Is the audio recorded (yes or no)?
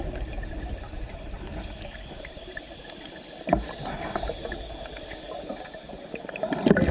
yes